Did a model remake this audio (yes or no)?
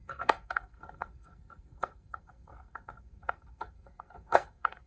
yes